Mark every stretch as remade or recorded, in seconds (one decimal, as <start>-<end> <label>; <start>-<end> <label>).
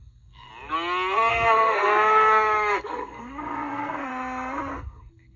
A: 0.0-0.5 remade; 0.5-1.3 recorded; 1.3-4.1 remade; 4.1-4.7 recorded; 4.7-5.4 remade